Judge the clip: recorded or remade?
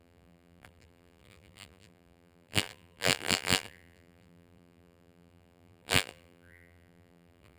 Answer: remade